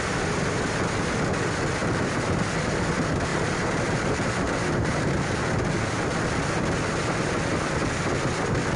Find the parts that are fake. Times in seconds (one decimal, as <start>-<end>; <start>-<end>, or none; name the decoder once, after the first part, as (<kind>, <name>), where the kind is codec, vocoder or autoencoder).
1.8-2.9 (vocoder, BigVGAN v2); 3.3-5.2